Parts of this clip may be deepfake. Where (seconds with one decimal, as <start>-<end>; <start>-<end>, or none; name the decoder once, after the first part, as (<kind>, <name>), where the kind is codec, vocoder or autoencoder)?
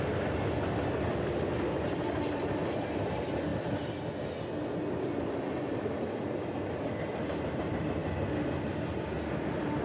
none